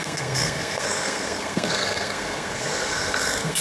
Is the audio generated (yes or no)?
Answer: yes